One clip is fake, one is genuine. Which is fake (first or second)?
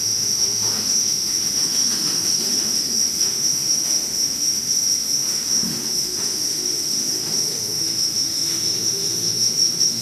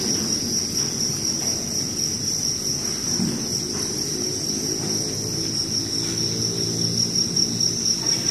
first